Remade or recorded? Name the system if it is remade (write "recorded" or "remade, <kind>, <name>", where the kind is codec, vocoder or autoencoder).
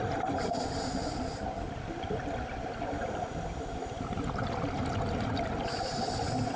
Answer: recorded